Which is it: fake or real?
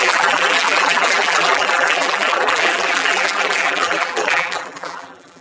fake